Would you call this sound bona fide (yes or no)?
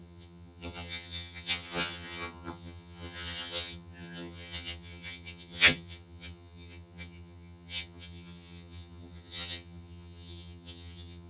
no